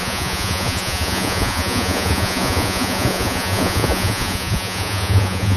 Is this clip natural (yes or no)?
no